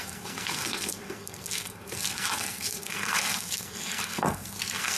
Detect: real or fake fake